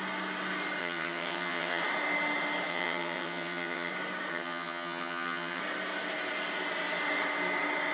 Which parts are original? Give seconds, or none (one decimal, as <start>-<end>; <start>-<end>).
0.0-0.8; 1.8-2.7; 3.9-4.3; 5.6-7.9